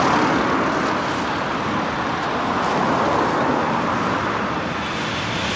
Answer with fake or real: real